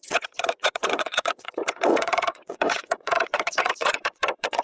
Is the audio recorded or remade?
remade